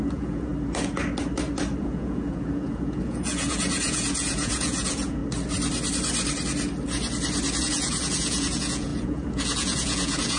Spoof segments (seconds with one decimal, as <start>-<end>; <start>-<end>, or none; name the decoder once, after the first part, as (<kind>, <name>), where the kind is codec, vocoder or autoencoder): 0.0-0.5 (vocoder, Vocos); 1.8-5.2; 7.6-10.4